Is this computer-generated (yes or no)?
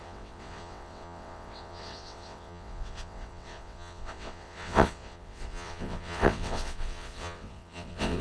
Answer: yes